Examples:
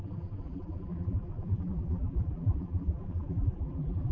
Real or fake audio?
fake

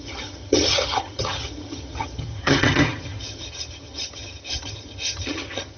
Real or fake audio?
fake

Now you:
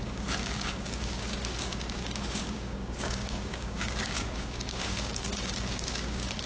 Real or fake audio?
fake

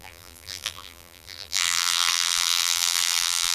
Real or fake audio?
fake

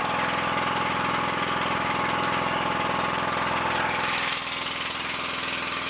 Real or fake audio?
real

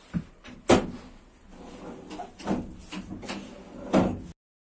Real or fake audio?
real